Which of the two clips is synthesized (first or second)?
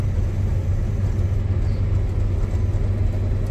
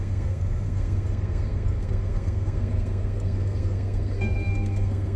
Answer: second